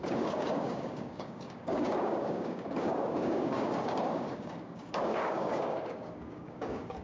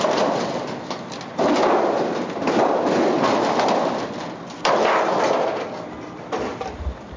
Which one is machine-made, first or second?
first